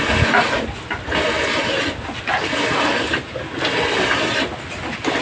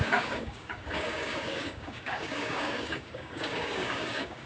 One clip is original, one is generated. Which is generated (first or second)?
second